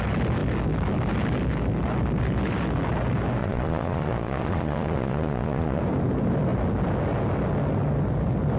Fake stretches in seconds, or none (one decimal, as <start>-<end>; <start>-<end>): 3.4-5.8